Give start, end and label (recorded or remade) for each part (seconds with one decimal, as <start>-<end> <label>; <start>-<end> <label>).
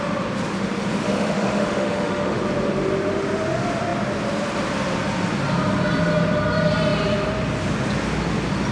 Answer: 0.0-1.1 recorded; 1.1-2.4 remade; 2.4-8.7 recorded